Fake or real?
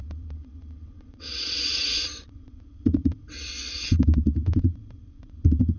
fake